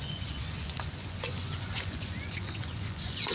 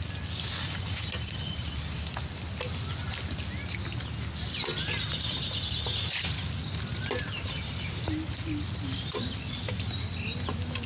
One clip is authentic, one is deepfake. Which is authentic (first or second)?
second